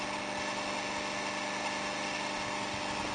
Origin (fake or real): real